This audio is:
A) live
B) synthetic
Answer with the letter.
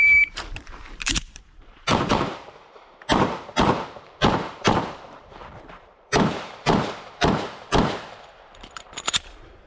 B